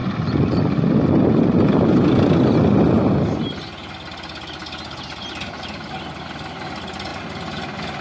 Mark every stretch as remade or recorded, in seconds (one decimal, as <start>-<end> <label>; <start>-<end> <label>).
0.0-8.0 recorded